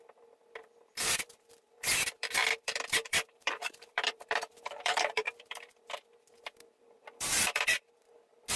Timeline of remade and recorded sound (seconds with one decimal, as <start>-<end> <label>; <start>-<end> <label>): 0.0-8.6 remade